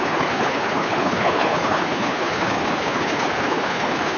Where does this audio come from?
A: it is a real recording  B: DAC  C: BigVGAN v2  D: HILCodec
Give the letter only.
D